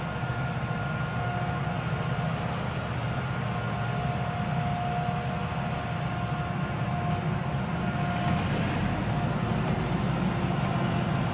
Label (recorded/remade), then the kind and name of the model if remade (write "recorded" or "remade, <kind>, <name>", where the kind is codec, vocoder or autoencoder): recorded